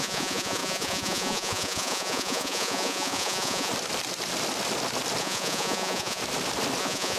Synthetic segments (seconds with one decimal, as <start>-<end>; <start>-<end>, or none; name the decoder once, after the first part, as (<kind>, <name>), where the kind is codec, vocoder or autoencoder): 0.0-3.7 (vocoder, Vocos); 5.2-6.2; 6.8-7.2